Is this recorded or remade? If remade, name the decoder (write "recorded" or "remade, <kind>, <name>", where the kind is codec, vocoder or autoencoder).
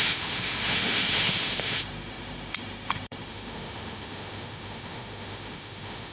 remade, autoencoder, DAC-VAE